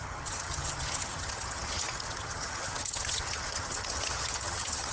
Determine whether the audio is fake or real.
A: fake